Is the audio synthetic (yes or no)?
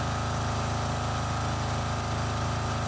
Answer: no